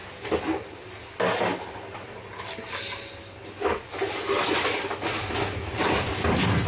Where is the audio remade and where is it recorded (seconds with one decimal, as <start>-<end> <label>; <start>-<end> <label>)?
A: 0.0-6.7 recorded